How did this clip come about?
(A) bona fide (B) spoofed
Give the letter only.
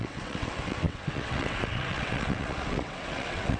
B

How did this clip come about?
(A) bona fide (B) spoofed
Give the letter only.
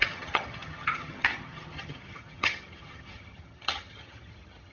B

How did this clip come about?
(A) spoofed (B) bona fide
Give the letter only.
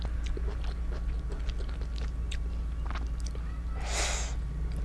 B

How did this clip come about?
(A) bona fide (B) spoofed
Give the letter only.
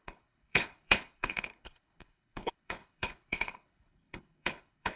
B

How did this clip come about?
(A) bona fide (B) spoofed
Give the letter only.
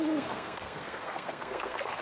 B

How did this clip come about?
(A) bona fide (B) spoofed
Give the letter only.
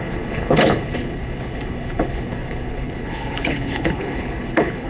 B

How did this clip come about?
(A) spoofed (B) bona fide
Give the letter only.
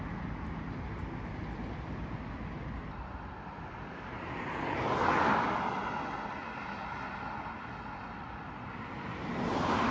B